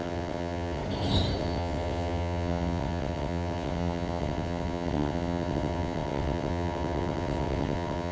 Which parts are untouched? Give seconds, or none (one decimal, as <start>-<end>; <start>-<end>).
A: 0.8-1.4